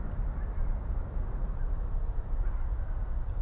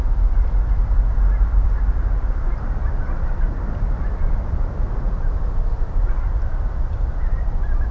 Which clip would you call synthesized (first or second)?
second